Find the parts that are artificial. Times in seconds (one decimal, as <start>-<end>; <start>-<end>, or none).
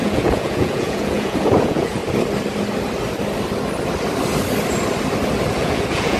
0.0-2.0; 5.5-6.2